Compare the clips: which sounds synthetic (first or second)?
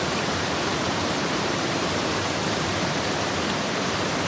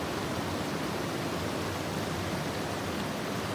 first